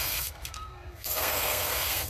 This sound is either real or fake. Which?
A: fake